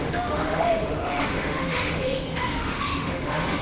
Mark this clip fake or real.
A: fake